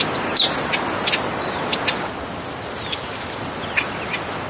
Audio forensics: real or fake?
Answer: real